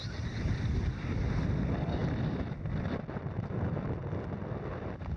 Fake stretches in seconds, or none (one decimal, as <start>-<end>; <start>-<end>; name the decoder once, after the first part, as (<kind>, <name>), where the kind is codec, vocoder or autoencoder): none